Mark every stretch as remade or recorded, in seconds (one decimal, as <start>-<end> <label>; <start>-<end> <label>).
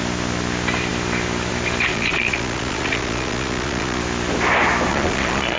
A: 0.0-1.9 recorded; 1.9-4.0 remade; 4.0-4.9 recorded; 4.9-5.6 remade